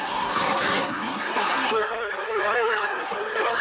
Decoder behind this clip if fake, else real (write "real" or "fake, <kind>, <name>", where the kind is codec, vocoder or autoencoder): fake, codec, SNAC